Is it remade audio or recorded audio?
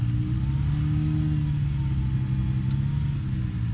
recorded